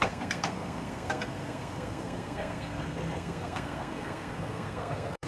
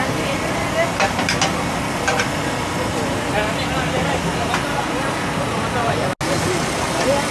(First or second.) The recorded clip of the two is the second